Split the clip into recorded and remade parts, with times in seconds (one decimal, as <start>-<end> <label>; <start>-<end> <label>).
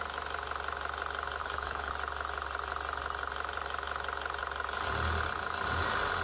0.0-1.4 recorded; 1.4-1.9 remade; 1.9-6.2 recorded